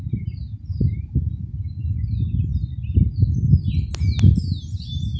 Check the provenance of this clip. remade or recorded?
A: recorded